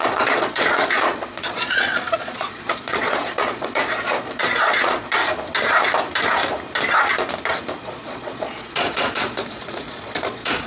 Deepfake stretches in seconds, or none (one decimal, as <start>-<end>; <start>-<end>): 0.0-5.2; 7.8-10.7